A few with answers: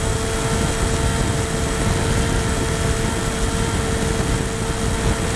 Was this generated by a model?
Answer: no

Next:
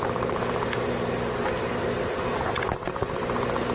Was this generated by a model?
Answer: no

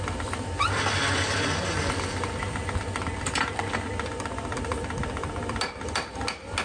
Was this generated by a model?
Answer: no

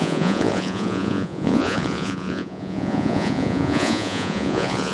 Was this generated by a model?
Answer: yes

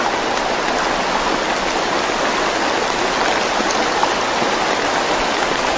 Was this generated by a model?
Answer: no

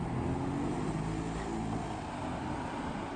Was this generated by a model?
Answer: no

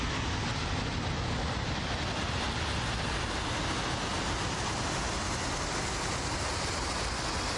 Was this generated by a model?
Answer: no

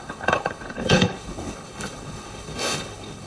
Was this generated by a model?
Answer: yes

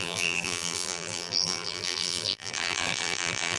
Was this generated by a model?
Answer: yes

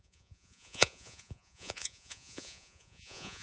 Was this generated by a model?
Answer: yes